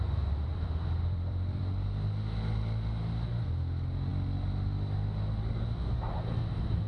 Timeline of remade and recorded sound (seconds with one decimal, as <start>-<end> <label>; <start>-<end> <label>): 0.0-0.5 recorded; 0.5-1.6 remade; 1.6-6.9 recorded